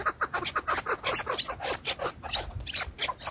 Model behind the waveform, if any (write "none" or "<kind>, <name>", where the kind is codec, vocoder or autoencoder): none